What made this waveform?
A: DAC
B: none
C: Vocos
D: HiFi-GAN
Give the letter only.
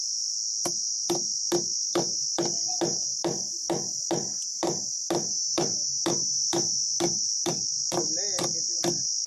B